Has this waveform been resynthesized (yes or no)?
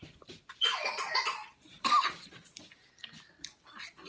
yes